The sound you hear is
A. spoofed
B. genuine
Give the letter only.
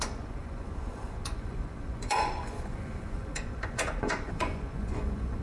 A